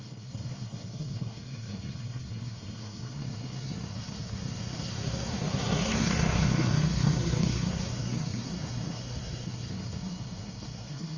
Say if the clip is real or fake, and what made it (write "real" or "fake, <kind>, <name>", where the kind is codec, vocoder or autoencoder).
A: fake, codec, SNAC